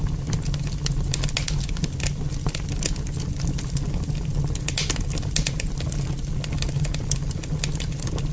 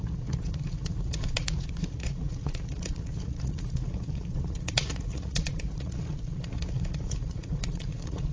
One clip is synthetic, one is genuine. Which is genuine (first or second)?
first